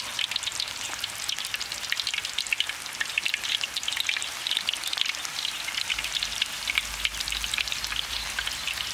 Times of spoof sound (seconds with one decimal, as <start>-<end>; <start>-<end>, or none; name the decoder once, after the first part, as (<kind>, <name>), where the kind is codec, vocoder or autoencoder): 0.0-8.9 (vocoder, BigVGAN v2)